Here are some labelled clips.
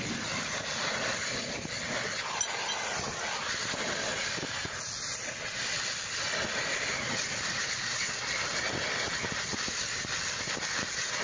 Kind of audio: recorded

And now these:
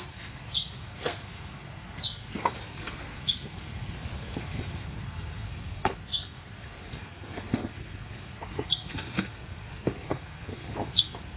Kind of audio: remade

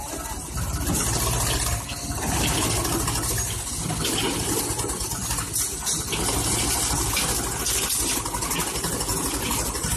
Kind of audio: recorded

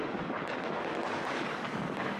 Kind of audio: remade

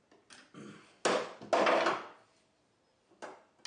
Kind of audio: recorded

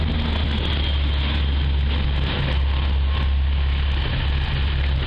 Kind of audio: recorded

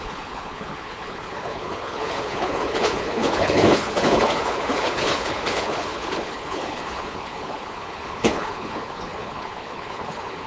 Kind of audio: remade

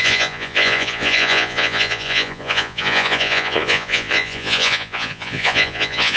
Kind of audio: remade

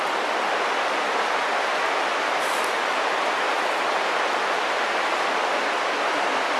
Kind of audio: recorded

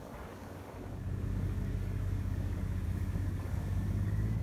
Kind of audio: remade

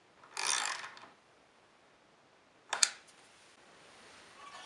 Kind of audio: recorded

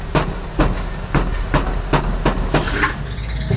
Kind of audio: recorded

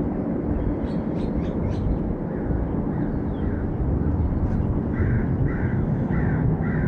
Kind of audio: recorded